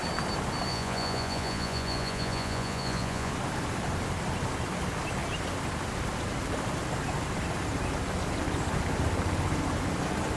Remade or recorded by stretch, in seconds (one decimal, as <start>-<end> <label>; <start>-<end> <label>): 0.0-0.7 recorded; 0.7-3.3 remade; 3.3-10.4 recorded